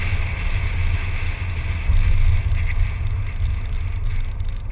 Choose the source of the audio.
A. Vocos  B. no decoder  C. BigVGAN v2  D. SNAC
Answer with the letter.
B